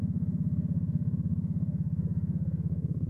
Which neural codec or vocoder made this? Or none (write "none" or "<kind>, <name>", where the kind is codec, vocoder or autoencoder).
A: codec, SNAC